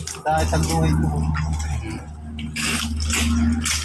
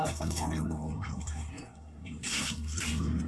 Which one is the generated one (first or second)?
second